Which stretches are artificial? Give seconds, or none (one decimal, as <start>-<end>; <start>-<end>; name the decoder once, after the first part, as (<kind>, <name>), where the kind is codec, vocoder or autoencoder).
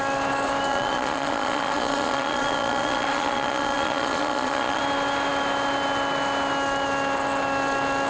0.7-4.8 (vocoder, Vocos)